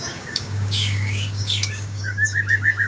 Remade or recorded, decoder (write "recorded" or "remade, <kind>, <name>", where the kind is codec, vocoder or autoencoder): remade, codec, DAC